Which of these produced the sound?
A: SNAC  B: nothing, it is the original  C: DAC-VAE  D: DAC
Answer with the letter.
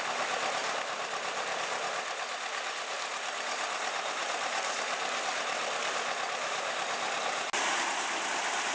B